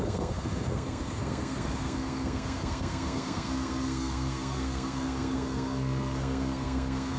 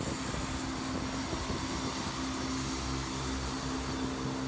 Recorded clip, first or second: second